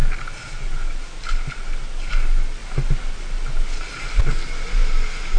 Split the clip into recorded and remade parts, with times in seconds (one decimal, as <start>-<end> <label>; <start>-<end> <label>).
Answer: 0.0-5.4 recorded